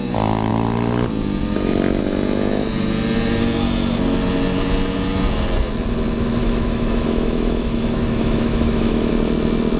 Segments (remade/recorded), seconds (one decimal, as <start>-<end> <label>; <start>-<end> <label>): 0.0-6.4 recorded; 6.4-9.1 remade; 9.1-9.8 recorded